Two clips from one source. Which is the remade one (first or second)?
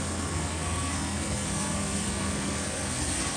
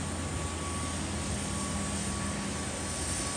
first